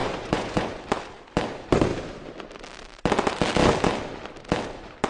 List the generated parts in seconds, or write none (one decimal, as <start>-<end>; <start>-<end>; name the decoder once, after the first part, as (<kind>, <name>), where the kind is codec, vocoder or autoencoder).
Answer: 0.0-0.8 (vocoder, Vocos)